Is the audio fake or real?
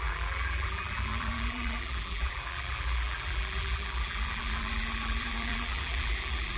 fake